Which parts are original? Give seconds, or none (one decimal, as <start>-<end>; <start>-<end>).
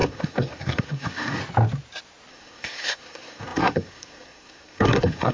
1.4-2.3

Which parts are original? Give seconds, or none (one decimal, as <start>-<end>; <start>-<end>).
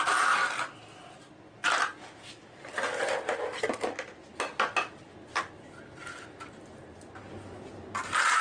0.0-8.4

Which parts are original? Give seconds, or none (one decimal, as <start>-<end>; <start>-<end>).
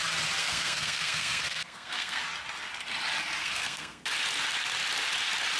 0.0-0.4; 2.2-3.4; 4.0-5.6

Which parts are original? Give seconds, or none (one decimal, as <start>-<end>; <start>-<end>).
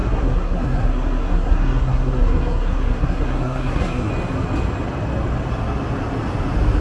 4.1-6.8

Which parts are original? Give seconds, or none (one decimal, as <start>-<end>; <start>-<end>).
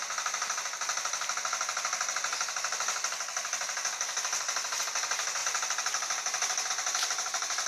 0.0-7.7